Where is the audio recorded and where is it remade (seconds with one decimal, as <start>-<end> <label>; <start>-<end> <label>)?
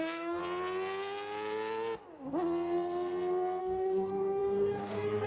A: 0.0-0.4 remade; 0.4-3.6 recorded; 3.6-5.3 remade